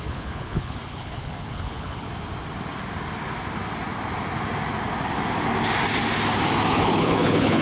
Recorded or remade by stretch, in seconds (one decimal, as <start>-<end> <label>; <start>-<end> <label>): 0.0-2.1 remade; 2.1-6.7 recorded; 6.7-7.6 remade